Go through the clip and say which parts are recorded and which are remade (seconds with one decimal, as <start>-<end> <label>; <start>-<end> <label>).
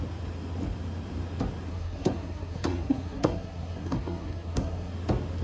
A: 0.0-1.7 recorded; 1.7-4.9 remade; 4.9-5.4 recorded